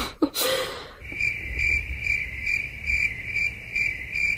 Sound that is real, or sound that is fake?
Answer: fake